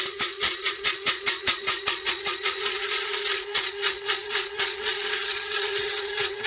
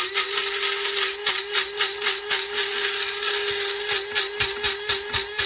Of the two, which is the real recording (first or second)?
second